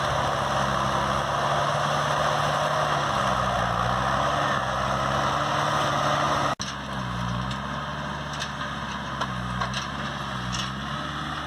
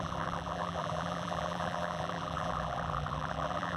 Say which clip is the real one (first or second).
first